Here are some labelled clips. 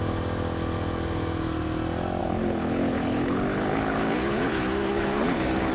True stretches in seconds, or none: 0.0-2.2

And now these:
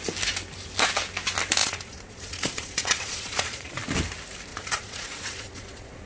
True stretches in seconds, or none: 0.0-1.6; 3.8-4.5